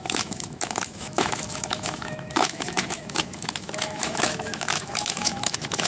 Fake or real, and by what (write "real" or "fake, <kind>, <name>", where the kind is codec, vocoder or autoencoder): fake, autoencoder, DAC-VAE